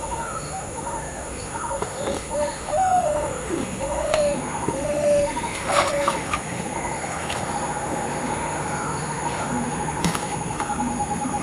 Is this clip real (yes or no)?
no